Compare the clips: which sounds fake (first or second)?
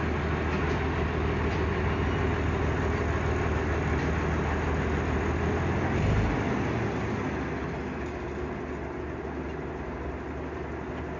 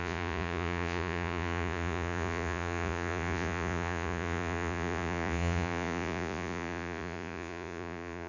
second